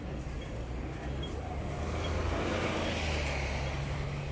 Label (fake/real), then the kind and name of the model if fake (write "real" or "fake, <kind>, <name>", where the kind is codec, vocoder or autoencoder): real